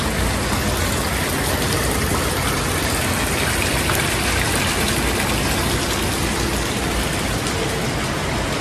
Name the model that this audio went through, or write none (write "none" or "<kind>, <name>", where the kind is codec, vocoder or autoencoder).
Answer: none